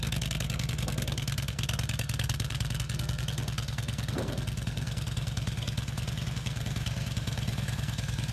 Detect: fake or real fake